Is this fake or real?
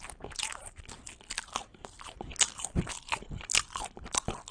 real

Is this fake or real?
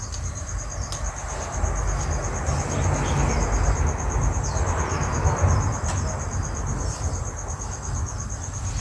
real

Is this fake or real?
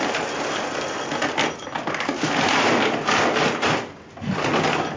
real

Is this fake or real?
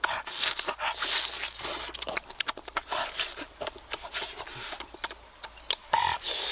real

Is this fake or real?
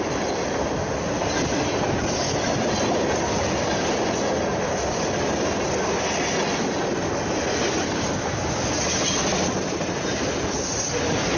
real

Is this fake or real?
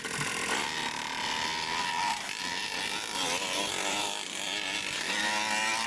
real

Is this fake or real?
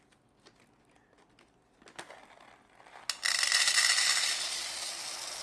real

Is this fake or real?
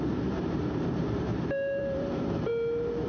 fake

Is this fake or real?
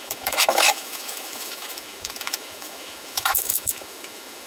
fake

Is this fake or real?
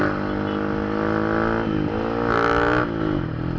real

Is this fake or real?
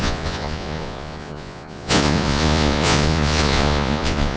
fake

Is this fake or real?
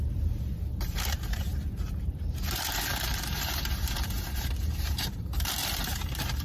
fake